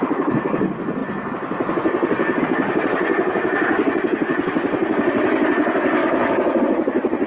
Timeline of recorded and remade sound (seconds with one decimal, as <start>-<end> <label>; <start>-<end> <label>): 0.0-6.0 recorded; 6.0-6.6 remade; 6.6-7.3 recorded